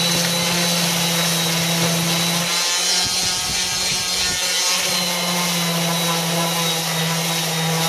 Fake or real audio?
real